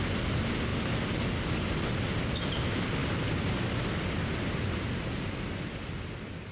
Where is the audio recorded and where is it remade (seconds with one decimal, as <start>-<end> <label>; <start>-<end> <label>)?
0.0-6.5 recorded